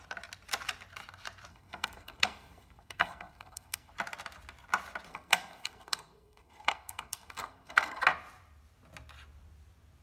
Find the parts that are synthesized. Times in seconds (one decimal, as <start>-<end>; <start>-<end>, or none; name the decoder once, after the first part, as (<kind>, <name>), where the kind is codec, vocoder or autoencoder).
1.5-3.9 (codec, SNAC); 5.1-8.0